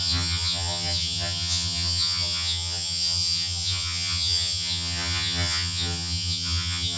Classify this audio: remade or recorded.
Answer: remade